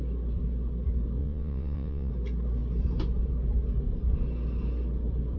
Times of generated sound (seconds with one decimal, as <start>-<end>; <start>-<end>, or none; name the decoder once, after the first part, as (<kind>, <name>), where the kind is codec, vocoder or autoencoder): 1.2-2.1 (vocoder, WaveNeXt)